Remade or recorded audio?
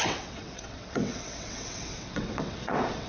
remade